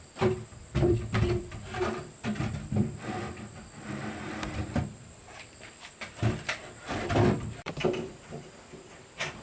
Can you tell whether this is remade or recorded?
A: remade